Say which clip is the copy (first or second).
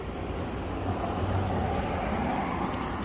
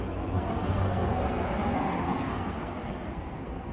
second